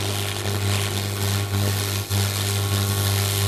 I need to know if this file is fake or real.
real